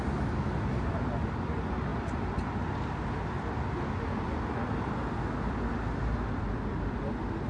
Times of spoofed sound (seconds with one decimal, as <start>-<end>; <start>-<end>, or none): none